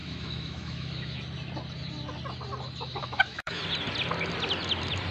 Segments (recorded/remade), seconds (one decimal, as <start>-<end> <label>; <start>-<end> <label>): 0.0-1.2 remade; 1.2-3.0 recorded; 3.0-3.6 remade; 3.6-5.1 recorded